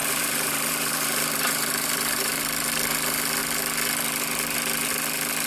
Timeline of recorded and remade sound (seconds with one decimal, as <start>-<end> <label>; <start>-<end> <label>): 0.0-2.4 remade; 2.4-5.5 recorded